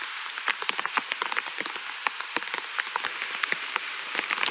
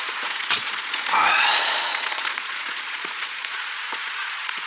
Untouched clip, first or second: first